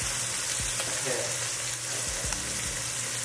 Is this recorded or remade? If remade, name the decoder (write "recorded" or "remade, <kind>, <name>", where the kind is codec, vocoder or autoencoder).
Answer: recorded